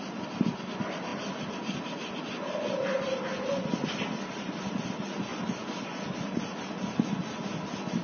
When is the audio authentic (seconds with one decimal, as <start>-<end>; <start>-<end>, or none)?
0.0-8.0